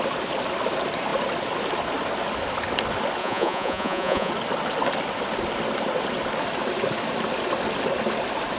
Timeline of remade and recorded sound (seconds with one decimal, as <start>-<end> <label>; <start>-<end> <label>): 0.0-3.2 recorded; 3.2-4.3 remade; 4.3-8.6 recorded